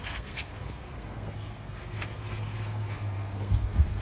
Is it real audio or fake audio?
fake